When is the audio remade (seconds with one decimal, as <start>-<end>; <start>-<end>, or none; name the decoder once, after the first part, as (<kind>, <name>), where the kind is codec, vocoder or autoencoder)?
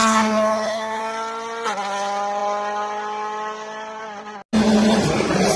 0.0-1.0 (codec, SNAC)